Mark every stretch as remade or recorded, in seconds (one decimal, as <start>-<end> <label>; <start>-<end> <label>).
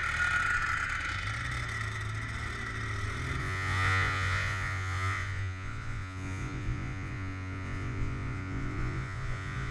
0.0-3.4 recorded; 3.4-9.7 remade